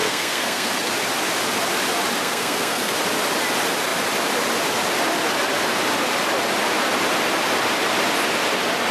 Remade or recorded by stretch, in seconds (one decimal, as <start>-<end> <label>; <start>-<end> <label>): 0.0-0.9 remade; 0.9-2.2 recorded; 2.2-2.9 remade; 2.9-8.9 recorded